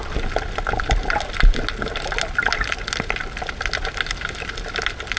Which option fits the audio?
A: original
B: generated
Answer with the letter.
A